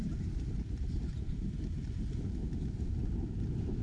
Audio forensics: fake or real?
real